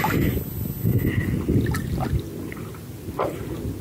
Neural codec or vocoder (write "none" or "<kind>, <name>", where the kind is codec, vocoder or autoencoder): none